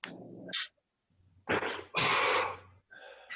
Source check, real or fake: real